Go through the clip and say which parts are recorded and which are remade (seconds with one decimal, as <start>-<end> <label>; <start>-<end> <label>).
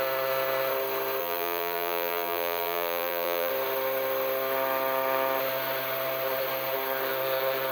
0.0-1.2 recorded; 1.2-3.5 remade; 3.5-7.7 recorded